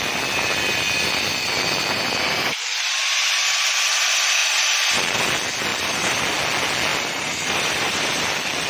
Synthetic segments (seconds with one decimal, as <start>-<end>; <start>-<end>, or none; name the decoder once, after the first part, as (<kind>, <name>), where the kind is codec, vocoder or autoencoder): 1.3-2.0 (vocoder, BigVGAN v2); 5.7-6.2; 6.9-8.2